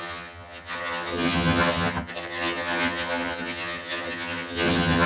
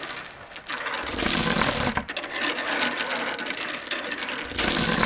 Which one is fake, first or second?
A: first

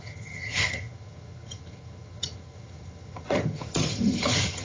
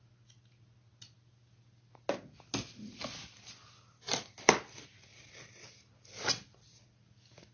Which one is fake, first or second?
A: first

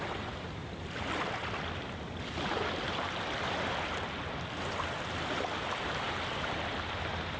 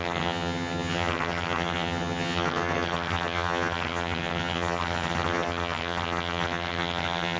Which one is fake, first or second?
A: second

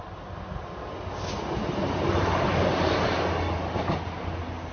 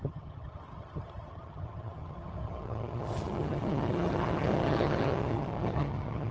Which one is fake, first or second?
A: second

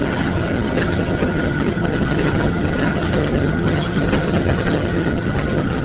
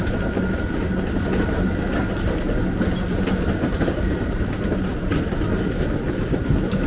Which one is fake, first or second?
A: first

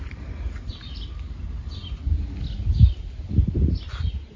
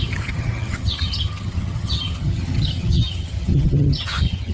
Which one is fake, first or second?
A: second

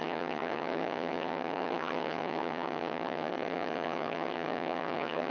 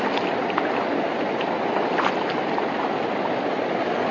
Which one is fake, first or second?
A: first